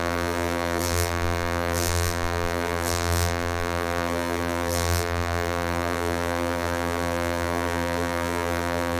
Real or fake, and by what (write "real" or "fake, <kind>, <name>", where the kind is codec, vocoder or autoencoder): fake, vocoder, BigVGAN v2